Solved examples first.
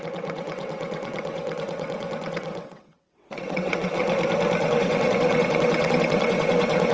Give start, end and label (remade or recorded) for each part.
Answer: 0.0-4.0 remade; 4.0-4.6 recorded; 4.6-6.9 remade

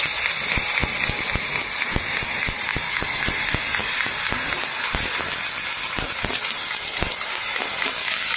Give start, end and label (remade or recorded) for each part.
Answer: 0.0-8.4 recorded

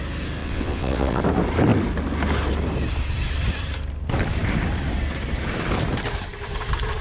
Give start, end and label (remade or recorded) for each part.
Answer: 0.0-0.4 recorded; 0.4-1.2 remade; 1.2-7.0 recorded